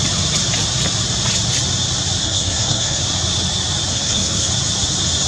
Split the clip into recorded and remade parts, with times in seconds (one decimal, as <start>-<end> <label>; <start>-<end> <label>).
0.0-2.2 recorded; 2.2-3.0 remade; 3.0-3.9 recorded; 3.9-4.5 remade; 4.5-5.3 recorded